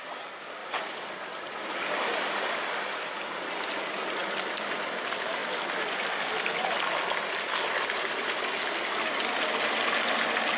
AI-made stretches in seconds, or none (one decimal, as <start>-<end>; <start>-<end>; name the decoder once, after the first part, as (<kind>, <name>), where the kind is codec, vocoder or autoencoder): 0.6-1.7 (vocoder, BigVGAN v2); 4.2-4.8